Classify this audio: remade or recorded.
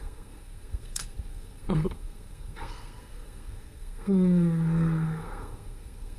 remade